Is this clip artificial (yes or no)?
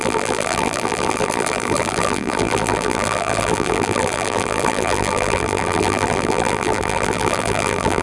yes